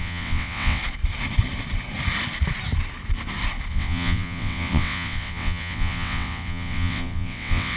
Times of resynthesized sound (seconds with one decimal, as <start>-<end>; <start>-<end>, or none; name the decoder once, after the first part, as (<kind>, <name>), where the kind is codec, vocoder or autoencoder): 0.0-0.8 (vocoder, WaveNeXt); 3.7-7.8